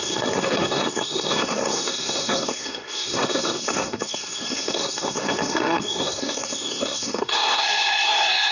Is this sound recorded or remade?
remade